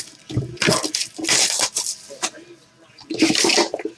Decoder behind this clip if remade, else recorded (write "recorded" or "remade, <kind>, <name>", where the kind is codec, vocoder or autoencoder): remade, vocoder, BigVGAN v2